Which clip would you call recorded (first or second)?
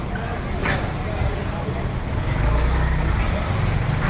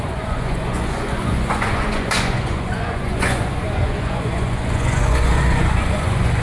first